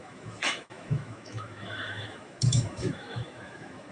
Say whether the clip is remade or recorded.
remade